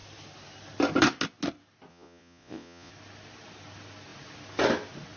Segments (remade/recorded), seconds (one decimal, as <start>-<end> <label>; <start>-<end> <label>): 0.0-1.9 recorded; 1.9-2.9 remade; 2.9-5.2 recorded